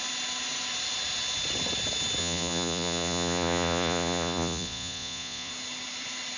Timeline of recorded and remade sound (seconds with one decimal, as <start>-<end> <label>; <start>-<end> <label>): 0.0-2.2 recorded; 2.2-5.5 remade; 5.5-6.4 recorded